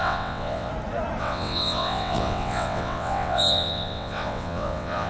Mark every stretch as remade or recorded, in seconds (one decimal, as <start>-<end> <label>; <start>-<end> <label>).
0.0-0.7 remade; 0.7-1.2 recorded; 1.2-5.1 remade